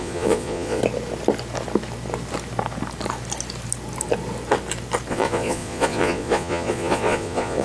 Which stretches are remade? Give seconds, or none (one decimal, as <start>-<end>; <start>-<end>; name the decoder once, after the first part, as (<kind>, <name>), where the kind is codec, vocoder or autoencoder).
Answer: 0.0-0.8 (vocoder, Vocos); 5.1-7.6